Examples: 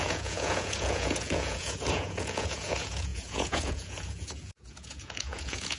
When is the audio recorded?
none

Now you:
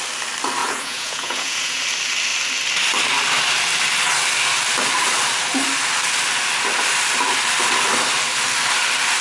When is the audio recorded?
0.0-0.6; 1.8-9.2

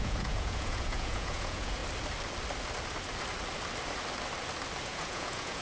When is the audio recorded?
1.8-4.8

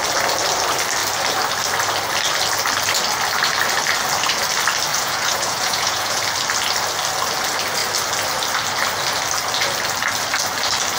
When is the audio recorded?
0.0-4.9; 6.2-11.0

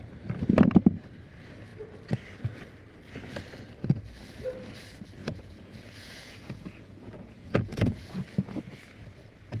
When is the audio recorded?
0.0-5.2; 8.1-9.6

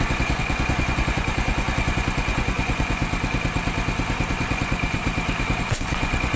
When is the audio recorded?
3.0-4.3; 5.0-5.6

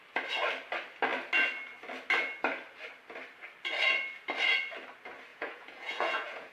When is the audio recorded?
0.0-5.3

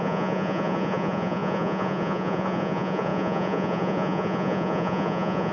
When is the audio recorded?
none